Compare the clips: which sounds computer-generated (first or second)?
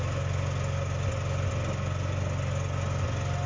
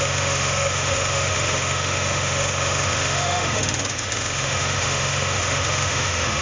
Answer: second